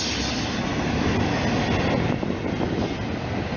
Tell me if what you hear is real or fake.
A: real